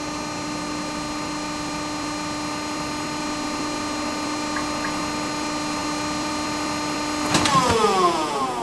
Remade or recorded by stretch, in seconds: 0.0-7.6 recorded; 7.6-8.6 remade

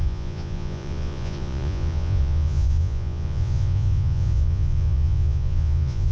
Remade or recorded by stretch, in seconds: 0.0-6.1 remade

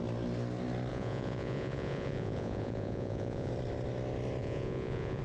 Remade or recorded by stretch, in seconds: 0.0-0.9 recorded; 0.9-3.5 remade; 3.5-4.4 recorded; 4.4-5.2 remade

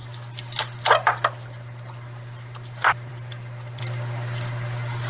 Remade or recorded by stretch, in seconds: 0.0-5.1 recorded

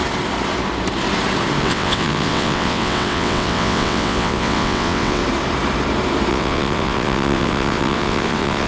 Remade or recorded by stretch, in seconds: 0.0-1.6 recorded; 1.6-5.2 remade; 5.2-6.3 recorded; 6.3-8.7 remade